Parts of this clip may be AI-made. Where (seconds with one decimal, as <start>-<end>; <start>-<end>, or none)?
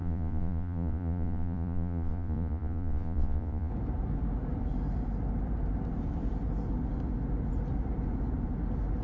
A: 0.0-3.7